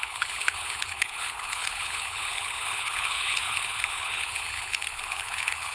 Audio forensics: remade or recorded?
remade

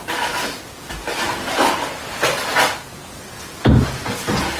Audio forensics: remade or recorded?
recorded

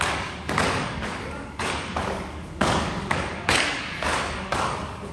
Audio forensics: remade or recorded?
remade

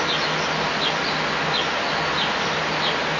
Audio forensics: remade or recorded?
recorded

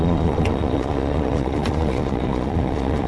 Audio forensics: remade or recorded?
remade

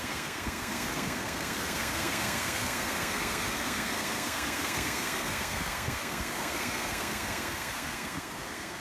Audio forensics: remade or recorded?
remade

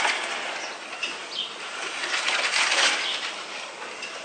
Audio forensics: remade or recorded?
remade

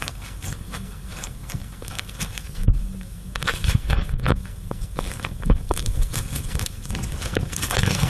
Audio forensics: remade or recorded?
remade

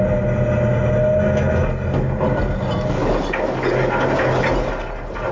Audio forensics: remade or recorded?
recorded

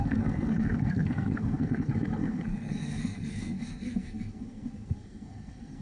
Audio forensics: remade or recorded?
remade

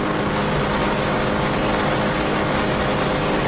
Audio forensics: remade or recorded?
recorded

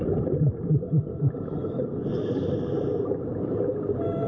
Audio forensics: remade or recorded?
remade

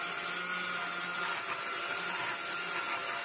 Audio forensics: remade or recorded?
recorded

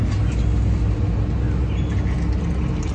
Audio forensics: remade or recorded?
recorded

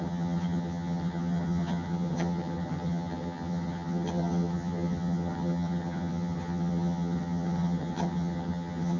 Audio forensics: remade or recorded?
remade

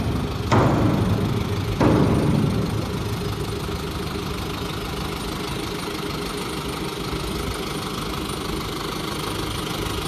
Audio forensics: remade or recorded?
recorded